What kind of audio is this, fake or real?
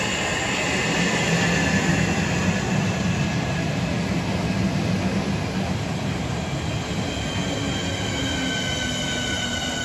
real